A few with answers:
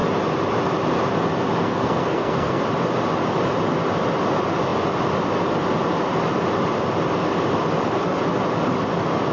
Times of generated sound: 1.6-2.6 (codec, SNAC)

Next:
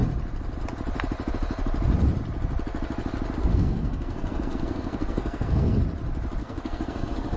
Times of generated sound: 3.4-5.8 (codec, SNAC); 6.4-7.4

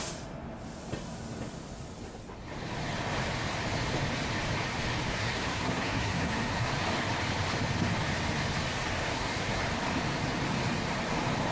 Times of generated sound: 5.1-6.7 (codec, SNAC); 9.0-9.6

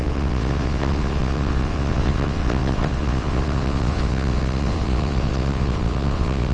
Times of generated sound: 0.0-6.5 (vocoder, WaveNeXt)

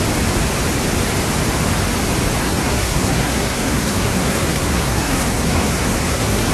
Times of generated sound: 2.4-6.5 (codec, SNAC)

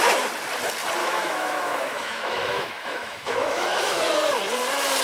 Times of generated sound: 1.0-4.0 (autoencoder, DAC-VAE)

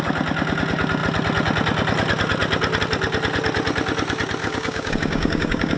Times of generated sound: 4.4-5.8 (codec, DAC)

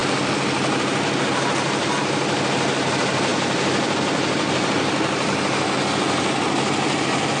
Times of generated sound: 0.0-3.3 (vocoder, BigVGAN v2); 7.0-7.4